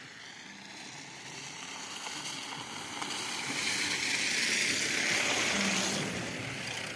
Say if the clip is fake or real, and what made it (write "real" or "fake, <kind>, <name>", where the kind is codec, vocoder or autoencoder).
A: real